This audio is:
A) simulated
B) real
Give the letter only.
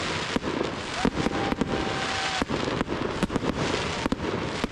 B